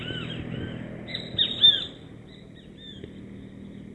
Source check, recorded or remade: recorded